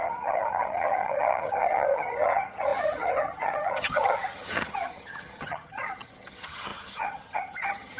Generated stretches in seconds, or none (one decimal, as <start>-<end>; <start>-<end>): 0.0-8.0